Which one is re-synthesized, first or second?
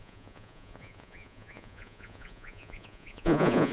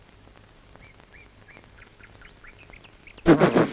first